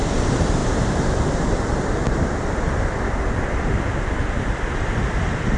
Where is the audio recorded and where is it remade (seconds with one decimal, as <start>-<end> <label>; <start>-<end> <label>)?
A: 0.0-5.6 recorded

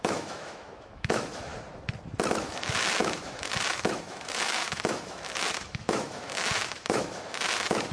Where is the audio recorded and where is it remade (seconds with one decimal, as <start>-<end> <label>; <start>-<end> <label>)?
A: 0.0-1.5 remade; 1.5-2.4 recorded; 2.4-7.9 remade